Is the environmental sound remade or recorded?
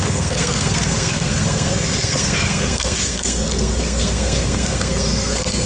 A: remade